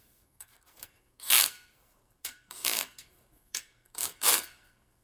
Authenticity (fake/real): fake